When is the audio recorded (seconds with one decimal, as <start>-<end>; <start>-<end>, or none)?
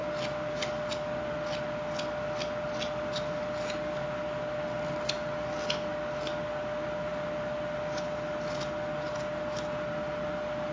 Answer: 0.0-10.7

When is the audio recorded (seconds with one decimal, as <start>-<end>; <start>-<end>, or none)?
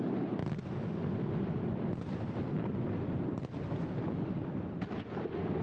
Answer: 0.0-5.6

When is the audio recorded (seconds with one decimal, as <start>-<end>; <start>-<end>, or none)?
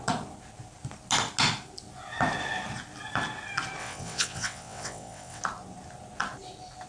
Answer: 0.0-3.8; 5.4-6.9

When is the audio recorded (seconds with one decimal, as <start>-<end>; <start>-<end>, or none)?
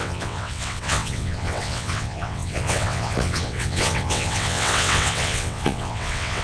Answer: none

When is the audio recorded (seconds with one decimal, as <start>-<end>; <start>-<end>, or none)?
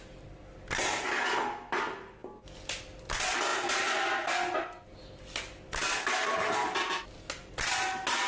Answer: 0.0-8.3